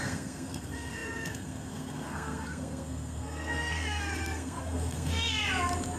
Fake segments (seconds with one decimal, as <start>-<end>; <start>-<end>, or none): 0.0-5.4